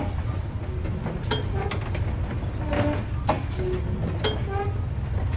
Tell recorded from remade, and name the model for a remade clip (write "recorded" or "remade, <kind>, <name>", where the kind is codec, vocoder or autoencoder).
recorded